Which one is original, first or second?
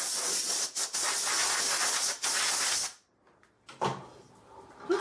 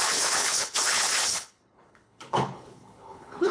first